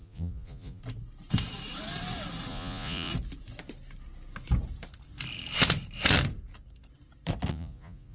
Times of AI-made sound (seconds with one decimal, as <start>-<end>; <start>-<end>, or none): 0.0-0.8; 2.5-3.1; 7.5-8.1